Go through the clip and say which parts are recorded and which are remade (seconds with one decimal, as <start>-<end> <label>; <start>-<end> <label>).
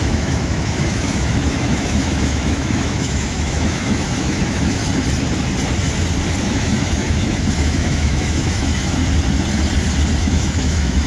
0.0-4.8 remade; 4.8-6.4 recorded; 6.4-9.0 remade; 9.0-10.2 recorded; 10.2-11.1 remade